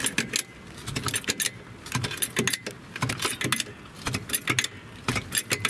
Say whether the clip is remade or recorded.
recorded